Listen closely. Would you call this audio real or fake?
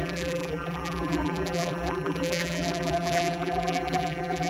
fake